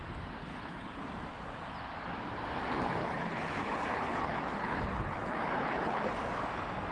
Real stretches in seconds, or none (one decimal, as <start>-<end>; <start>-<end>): 0.0-0.4; 1.0-3.0; 6.1-6.9